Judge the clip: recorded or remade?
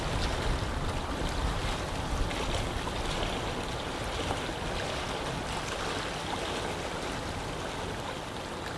recorded